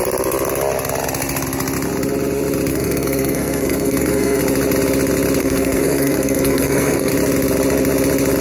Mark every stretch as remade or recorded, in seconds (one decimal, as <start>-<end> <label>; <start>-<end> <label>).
0.0-2.7 recorded; 2.7-4.4 remade; 4.4-5.4 recorded; 5.4-7.1 remade; 7.1-8.4 recorded